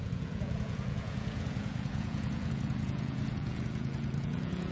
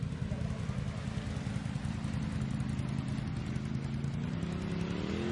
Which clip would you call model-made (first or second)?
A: first